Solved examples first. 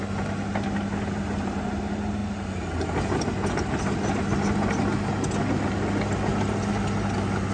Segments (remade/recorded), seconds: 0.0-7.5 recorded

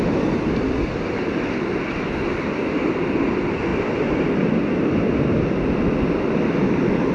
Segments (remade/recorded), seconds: 0.0-7.1 recorded

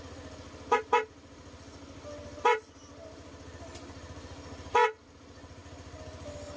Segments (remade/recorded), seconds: 0.0-6.6 recorded

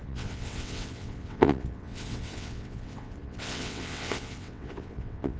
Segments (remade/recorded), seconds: 0.0-5.4 remade

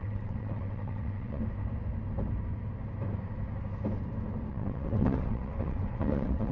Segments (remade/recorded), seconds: 0.0-1.4 remade; 1.4-4.5 recorded; 4.5-6.5 remade

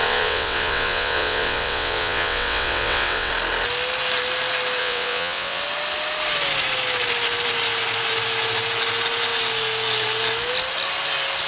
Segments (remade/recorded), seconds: 0.0-3.3 remade; 3.3-4.8 recorded; 4.8-5.6 remade; 5.6-11.5 recorded

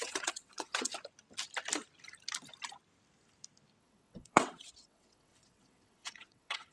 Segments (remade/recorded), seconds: 0.0-0.9 remade; 0.9-3.8 recorded; 3.8-6.7 remade

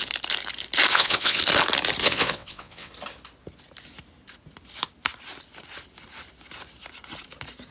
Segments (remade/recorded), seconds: 0.0-0.9 recorded; 0.9-1.4 remade; 1.4-2.0 recorded; 2.0-2.9 remade; 2.9-7.7 recorded